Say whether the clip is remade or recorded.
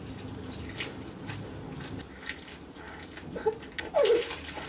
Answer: recorded